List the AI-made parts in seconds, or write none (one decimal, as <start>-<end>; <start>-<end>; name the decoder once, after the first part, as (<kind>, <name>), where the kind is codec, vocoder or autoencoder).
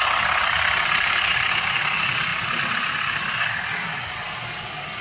1.3-1.8 (vocoder, BigVGAN v2)